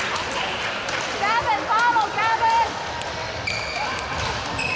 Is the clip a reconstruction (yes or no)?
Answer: yes